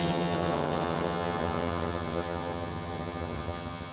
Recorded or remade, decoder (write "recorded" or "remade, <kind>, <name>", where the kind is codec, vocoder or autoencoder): remade, vocoder, HiFi-GAN